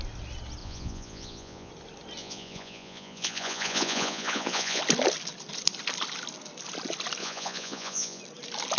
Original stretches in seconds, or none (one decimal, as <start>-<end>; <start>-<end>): 0.0-0.6; 1.7-2.2; 4.8-7.2; 8.2-8.8